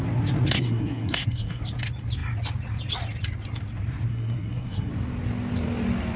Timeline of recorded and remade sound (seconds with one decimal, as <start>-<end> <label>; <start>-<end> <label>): 0.0-0.5 recorded; 0.5-1.6 remade; 1.6-4.1 recorded; 4.1-4.9 remade; 4.9-6.2 recorded